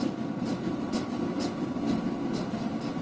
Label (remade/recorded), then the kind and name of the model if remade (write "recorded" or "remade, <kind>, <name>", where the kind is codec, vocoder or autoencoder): recorded